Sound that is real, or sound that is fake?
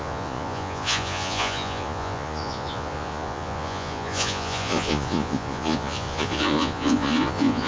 fake